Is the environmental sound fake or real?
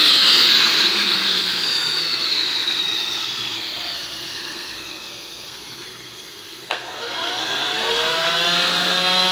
fake